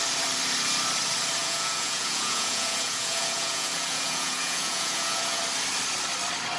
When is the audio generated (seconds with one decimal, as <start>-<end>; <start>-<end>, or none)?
1.4-5.4